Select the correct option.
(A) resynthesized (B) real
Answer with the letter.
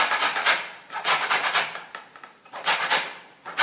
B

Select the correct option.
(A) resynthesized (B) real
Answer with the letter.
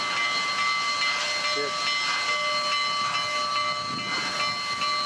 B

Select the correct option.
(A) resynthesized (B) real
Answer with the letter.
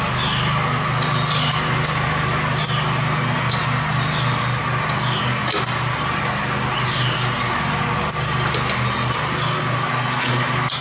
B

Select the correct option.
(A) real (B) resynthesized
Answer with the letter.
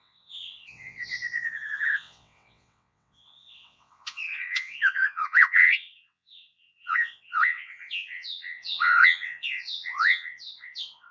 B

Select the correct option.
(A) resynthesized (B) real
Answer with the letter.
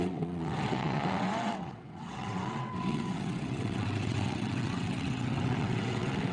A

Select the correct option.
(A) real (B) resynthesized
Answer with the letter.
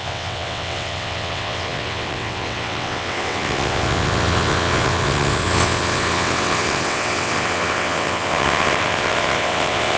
B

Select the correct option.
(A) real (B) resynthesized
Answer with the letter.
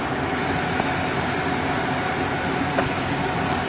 A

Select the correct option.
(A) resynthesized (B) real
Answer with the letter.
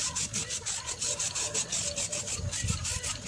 B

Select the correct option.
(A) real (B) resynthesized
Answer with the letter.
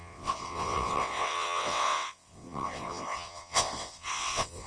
B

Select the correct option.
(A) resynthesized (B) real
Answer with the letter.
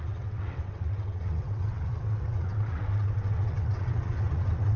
A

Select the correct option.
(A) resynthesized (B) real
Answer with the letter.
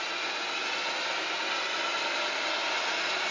B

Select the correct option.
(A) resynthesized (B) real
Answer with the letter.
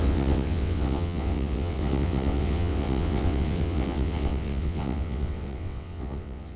A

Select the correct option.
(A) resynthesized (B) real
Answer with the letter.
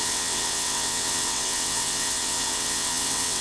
A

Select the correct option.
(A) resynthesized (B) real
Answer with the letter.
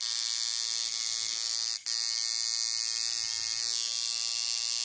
B